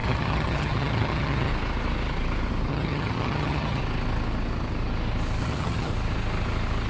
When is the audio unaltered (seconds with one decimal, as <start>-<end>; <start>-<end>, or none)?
1.5-2.7; 3.8-5.4; 5.9-6.9